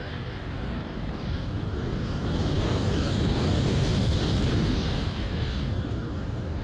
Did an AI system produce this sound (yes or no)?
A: yes